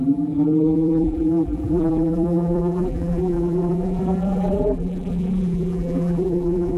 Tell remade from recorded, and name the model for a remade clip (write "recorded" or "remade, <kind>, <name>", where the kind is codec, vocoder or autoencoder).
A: remade, vocoder, BigVGAN v2